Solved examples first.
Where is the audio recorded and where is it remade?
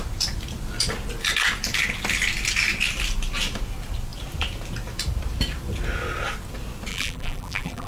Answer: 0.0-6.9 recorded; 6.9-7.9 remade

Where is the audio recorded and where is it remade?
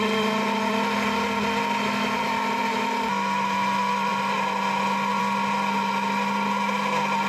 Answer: 0.0-7.3 recorded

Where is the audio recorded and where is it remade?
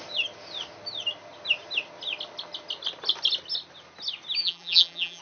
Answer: 0.0-4.4 recorded; 4.4-5.2 remade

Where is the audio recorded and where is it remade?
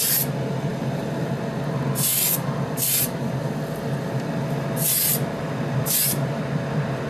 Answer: 0.0-0.7 recorded; 0.7-1.3 remade; 1.3-2.1 recorded; 2.1-6.4 remade; 6.4-7.1 recorded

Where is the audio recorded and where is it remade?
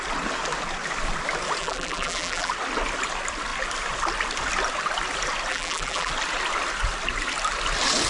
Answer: 0.0-1.6 recorded; 1.6-2.5 remade; 2.5-5.5 recorded; 5.5-6.1 remade; 6.1-8.1 recorded